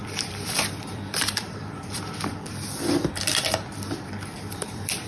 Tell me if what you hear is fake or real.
fake